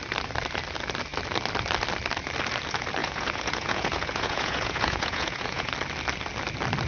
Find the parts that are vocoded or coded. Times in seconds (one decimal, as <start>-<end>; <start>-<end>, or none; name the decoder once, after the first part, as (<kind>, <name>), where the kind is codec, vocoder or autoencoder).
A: 3.0-5.7 (vocoder, Vocos)